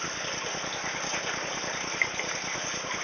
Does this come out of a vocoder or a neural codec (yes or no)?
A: no